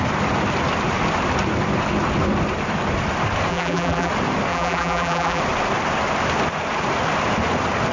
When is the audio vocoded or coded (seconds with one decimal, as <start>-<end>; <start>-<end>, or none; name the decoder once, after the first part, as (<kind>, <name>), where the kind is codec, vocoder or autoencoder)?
3.5-4.1 (vocoder, BigVGAN v2); 4.5-5.4